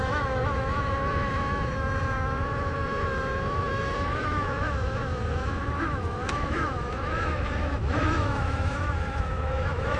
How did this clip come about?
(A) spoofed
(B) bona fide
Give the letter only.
A